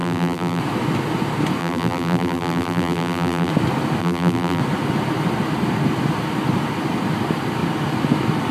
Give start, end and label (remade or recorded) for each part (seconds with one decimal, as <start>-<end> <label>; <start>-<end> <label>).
0.0-0.6 remade; 0.6-1.6 recorded; 1.6-3.5 remade; 3.5-4.0 recorded; 4.0-4.6 remade; 4.6-8.5 recorded